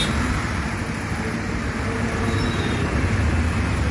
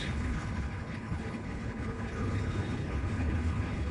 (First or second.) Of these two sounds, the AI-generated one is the second